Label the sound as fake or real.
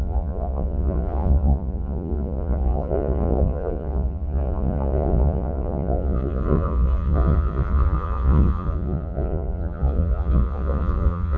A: fake